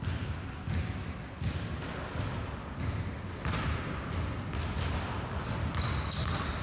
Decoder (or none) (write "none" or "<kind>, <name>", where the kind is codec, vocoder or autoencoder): none